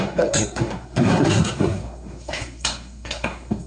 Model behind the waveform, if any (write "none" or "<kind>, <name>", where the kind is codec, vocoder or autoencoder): codec, SNAC